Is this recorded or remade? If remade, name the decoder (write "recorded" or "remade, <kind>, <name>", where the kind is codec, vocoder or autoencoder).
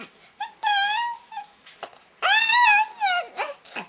recorded